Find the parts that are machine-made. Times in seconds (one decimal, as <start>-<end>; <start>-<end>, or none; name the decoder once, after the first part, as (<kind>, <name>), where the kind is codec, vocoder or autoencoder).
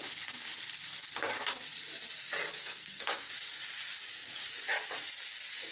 2.6-3.3 (codec, SNAC)